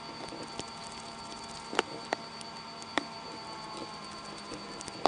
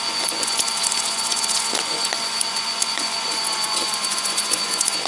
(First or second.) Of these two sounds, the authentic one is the first